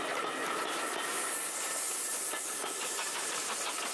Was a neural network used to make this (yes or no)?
no